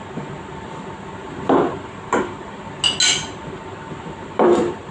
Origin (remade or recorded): recorded